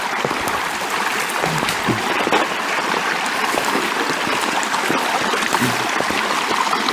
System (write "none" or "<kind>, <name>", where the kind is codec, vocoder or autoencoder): none